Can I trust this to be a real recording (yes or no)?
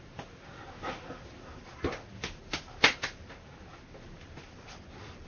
yes